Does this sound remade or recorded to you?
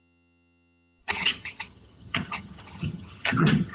remade